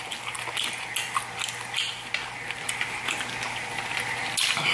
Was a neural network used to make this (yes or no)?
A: no